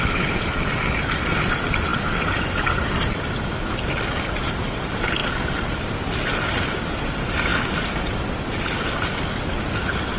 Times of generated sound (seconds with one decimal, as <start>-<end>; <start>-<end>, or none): none